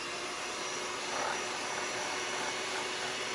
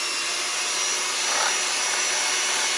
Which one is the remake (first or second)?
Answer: first